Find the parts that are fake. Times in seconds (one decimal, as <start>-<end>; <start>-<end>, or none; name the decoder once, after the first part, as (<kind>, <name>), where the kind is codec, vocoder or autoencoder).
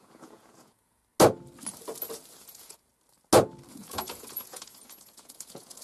0.0-1.0 (vocoder, Vocos); 2.4-2.9; 3.7-5.8